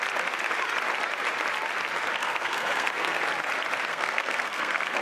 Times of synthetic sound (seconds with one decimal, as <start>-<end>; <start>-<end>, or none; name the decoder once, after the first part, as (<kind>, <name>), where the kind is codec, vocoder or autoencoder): 2.2-3.2 (codec, SNAC); 3.9-5.0